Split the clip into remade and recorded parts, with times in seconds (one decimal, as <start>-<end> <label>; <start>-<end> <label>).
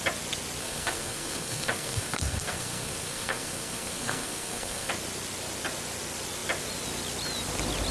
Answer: 0.0-0.6 recorded; 0.6-4.9 remade; 4.9-7.9 recorded